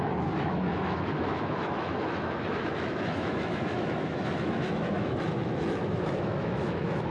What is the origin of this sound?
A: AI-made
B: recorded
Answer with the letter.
A